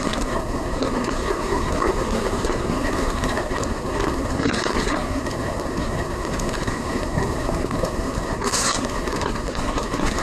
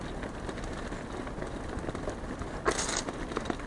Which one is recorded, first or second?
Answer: second